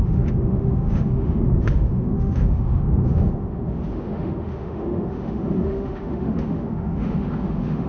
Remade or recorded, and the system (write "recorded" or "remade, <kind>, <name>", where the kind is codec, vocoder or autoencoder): remade, autoencoder, DAC-VAE